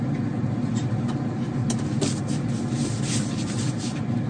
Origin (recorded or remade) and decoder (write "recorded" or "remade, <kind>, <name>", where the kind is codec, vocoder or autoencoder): recorded